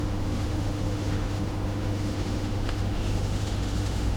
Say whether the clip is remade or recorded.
remade